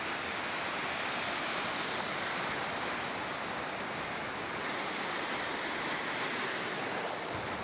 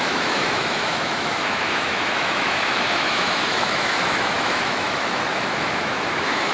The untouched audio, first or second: first